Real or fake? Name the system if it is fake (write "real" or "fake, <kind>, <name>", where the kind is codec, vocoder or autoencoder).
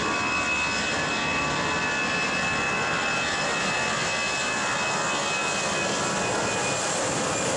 real